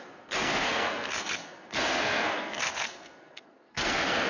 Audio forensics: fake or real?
fake